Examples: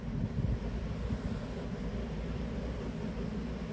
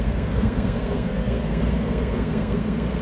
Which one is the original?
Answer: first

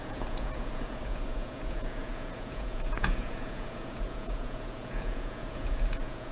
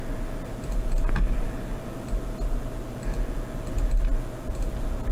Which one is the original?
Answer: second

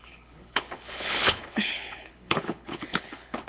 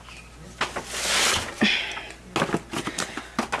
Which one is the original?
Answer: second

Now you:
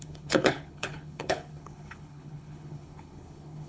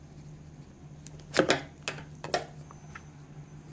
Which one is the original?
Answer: second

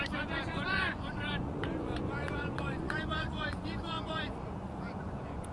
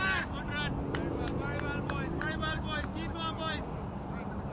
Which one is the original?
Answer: second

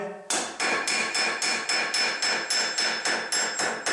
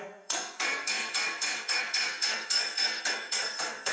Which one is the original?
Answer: first